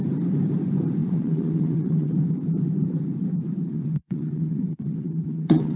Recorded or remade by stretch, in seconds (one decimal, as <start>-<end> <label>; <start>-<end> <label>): 0.0-1.0 recorded; 1.0-2.1 remade; 2.1-3.7 recorded; 3.7-5.8 remade